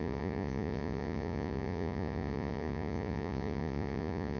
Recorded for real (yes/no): no